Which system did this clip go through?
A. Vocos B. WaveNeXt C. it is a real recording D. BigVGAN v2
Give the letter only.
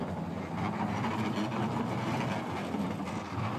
C